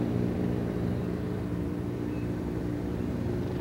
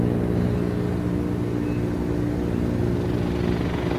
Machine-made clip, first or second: first